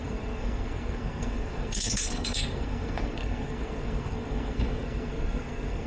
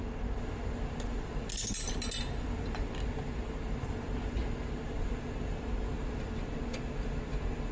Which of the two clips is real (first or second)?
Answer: second